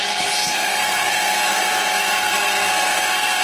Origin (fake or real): fake